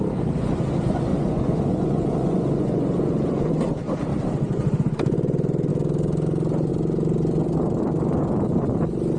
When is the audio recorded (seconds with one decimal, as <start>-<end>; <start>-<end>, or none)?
0.0-1.1; 3.5-9.2